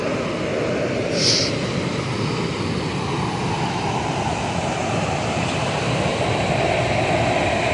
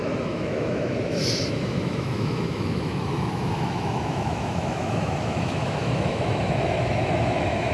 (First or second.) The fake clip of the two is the second